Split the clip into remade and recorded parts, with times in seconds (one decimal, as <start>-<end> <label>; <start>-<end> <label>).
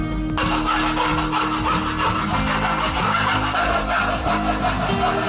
0.0-5.3 recorded